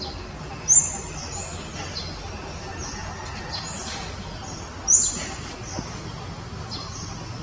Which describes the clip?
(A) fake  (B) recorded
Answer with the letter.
B